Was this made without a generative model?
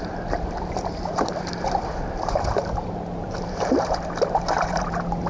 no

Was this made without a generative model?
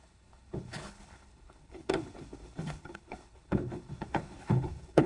no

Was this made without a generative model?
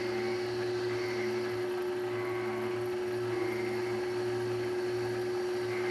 yes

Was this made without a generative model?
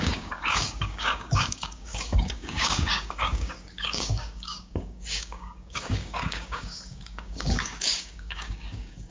no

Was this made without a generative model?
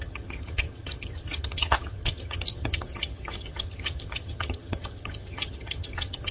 no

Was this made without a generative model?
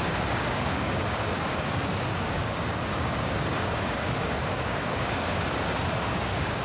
no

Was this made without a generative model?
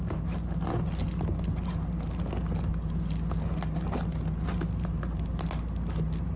yes